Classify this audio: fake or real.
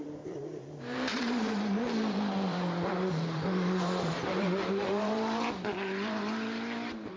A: fake